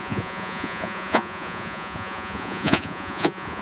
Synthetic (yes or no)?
yes